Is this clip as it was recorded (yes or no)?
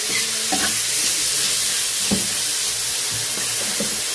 yes